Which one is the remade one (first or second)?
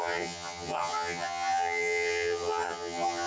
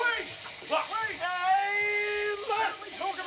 first